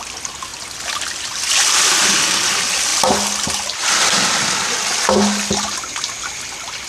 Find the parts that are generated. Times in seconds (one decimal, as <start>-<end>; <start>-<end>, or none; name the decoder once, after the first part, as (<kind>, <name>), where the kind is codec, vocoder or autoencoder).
none